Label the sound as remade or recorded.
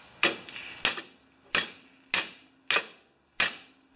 recorded